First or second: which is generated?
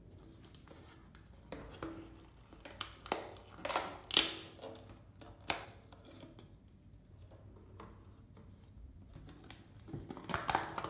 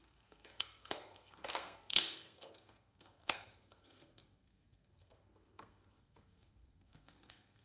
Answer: second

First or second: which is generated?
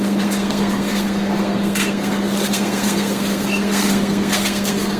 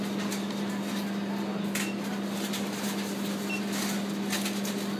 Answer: first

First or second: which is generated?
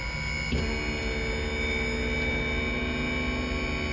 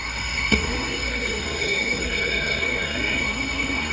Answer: second